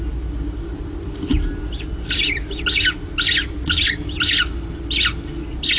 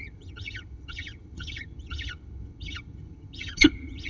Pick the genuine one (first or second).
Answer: first